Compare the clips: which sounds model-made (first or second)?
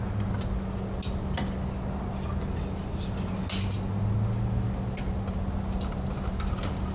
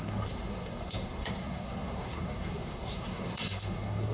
second